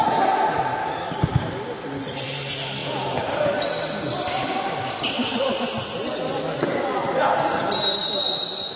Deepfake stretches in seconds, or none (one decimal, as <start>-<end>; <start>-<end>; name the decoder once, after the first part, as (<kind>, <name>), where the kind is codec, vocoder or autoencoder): 0.8-1.4 (codec, DAC)